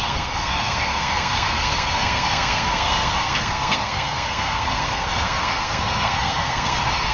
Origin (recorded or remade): remade